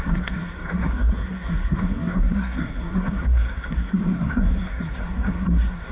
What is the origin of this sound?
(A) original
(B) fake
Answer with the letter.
B